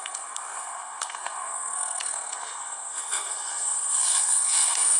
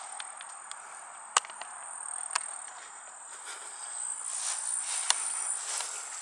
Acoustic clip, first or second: second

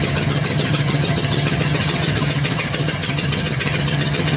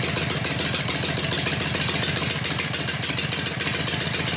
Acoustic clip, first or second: second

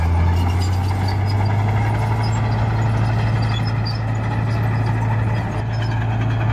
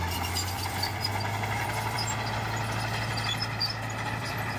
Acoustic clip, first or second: first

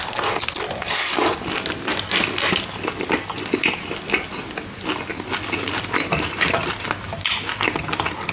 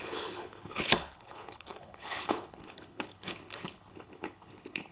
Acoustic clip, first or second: first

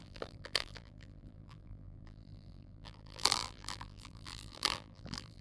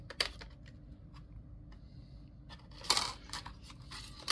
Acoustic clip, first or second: second